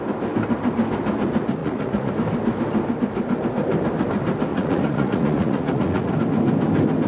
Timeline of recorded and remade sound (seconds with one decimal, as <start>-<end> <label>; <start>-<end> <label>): 0.0-1.6 recorded; 1.6-2.1 remade; 2.1-4.5 recorded; 4.5-6.1 remade; 6.1-7.1 recorded